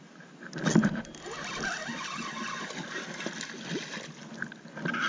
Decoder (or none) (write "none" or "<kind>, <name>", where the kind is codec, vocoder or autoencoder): none